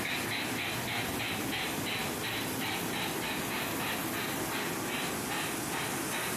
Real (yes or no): yes